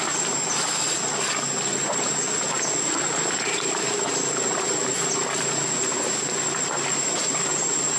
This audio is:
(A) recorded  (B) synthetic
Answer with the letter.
A